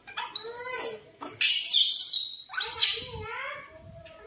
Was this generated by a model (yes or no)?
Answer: no